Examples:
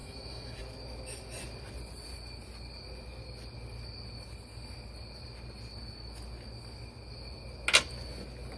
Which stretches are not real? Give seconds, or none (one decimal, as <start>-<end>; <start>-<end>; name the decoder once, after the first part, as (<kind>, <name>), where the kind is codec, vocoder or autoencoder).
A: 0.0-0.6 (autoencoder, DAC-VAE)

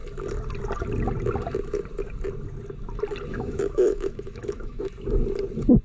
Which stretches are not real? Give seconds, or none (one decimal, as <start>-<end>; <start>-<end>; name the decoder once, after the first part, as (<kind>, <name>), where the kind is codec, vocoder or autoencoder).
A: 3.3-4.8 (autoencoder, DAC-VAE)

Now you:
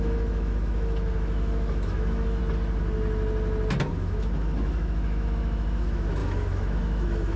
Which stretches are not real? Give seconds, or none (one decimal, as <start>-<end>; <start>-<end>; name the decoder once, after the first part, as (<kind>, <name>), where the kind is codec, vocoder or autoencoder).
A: 0.0-2.4 (autoencoder, DAC-VAE); 3.9-7.4